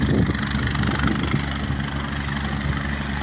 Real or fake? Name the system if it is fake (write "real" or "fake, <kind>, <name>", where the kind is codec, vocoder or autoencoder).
real